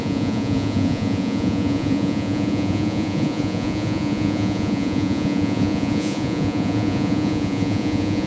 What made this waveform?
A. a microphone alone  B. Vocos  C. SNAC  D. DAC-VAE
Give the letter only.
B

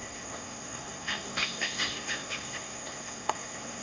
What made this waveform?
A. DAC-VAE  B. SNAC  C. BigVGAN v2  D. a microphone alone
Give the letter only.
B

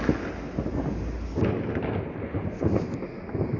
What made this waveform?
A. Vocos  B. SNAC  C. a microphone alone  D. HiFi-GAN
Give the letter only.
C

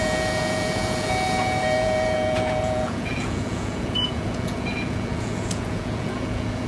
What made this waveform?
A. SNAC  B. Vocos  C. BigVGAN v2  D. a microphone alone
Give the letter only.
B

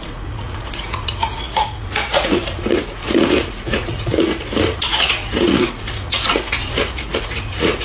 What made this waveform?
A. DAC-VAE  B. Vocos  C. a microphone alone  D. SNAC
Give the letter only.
B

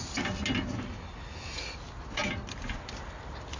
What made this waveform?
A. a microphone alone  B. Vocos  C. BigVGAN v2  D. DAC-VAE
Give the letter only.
A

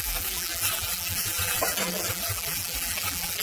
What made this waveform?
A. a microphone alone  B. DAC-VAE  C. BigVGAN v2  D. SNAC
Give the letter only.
C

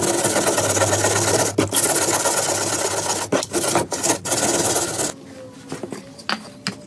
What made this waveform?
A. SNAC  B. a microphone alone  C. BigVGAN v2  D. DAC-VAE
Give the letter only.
B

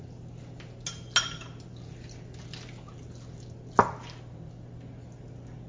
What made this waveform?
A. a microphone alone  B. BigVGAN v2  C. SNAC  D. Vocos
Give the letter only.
A